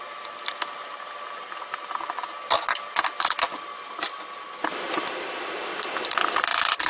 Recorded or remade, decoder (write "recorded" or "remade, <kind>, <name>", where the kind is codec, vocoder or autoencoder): recorded